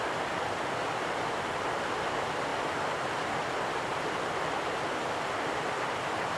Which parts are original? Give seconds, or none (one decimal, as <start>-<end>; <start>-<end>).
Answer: 0.0-6.4